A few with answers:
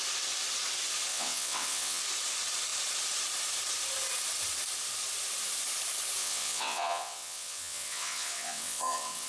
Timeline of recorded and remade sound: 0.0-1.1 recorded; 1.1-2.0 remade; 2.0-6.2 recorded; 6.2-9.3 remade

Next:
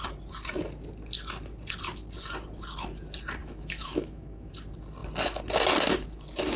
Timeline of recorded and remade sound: 0.0-3.4 recorded; 3.4-4.5 remade; 4.5-6.6 recorded

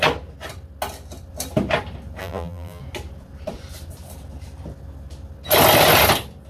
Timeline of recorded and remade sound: 0.0-2.2 recorded; 2.2-2.8 remade; 2.8-6.5 recorded